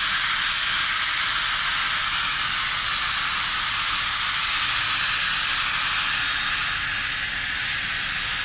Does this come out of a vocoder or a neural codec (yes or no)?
no